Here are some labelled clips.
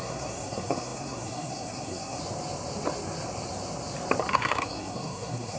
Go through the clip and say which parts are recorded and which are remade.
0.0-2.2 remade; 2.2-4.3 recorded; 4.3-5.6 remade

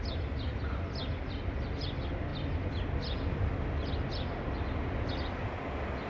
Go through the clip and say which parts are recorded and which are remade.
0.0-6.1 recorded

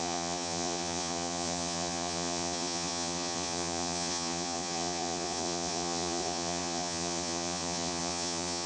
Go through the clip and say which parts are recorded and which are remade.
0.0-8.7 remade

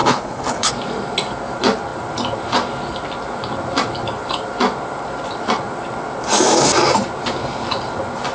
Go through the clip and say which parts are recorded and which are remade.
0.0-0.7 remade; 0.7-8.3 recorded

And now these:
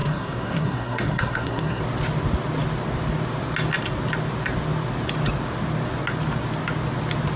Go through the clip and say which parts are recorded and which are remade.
0.0-1.8 remade; 1.8-7.4 recorded